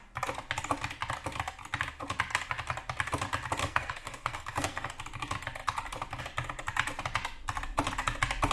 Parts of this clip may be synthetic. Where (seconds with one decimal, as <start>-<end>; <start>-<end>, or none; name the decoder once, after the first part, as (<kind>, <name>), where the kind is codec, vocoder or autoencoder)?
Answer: 3.6-4.9 (codec, SNAC)